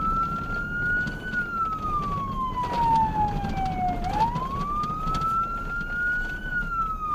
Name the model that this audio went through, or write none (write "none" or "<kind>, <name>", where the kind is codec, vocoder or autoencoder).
none